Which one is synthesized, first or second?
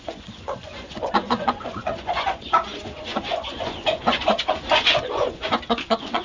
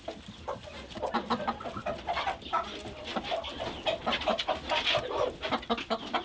first